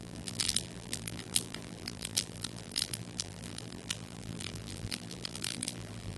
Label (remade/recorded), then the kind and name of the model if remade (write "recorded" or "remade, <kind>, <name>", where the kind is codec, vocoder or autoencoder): remade, vocoder, BigVGAN v2